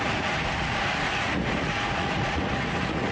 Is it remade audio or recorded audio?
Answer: remade